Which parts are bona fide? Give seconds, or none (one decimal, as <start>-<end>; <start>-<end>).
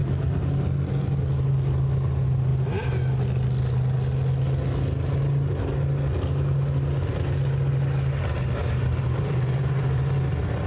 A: 0.0-8.6